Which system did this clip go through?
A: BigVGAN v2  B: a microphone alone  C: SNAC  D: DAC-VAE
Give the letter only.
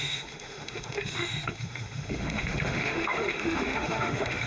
D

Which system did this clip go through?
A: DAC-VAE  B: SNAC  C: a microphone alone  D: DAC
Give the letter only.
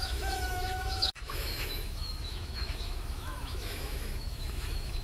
A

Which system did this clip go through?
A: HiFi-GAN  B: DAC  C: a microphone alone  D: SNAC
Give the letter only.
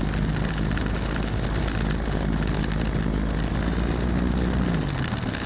C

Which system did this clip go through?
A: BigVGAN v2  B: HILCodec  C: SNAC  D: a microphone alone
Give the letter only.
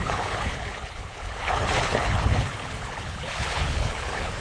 B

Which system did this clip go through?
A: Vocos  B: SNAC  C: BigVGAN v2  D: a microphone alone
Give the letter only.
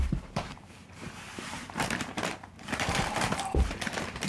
C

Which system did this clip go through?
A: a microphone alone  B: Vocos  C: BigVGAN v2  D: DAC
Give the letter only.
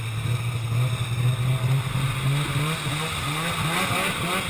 A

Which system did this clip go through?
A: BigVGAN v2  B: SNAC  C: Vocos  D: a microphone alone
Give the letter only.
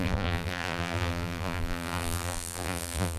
A